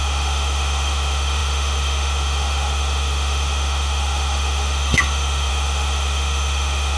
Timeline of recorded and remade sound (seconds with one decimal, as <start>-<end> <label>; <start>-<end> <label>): 0.0-7.0 remade